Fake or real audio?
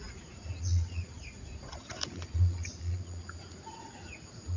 fake